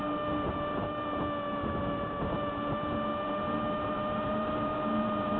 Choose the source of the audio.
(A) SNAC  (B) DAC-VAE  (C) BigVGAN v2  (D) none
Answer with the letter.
C